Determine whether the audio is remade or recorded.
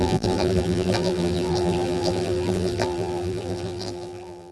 remade